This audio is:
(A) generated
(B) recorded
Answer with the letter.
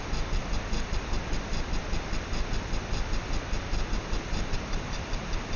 B